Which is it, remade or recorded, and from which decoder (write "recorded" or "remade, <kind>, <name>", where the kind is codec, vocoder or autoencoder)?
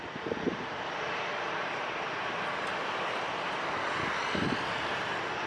recorded